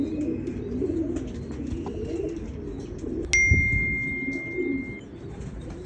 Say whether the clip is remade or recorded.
recorded